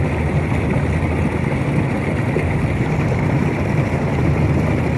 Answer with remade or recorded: recorded